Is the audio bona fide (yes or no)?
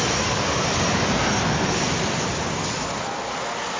yes